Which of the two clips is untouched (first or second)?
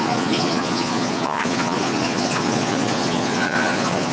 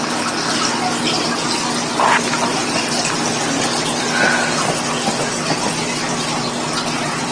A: second